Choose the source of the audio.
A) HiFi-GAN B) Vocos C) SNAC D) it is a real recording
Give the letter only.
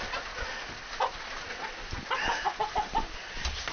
D